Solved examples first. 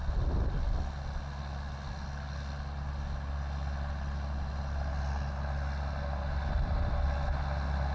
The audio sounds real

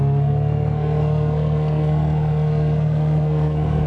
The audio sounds fake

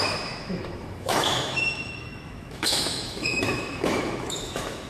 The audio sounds fake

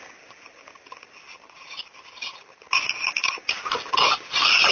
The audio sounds real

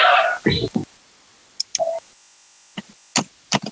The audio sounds real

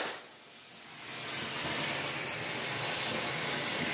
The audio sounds real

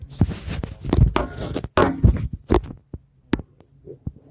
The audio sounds real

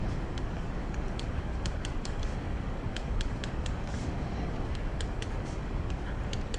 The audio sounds fake